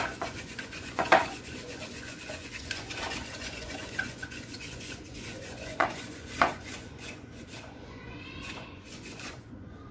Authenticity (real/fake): fake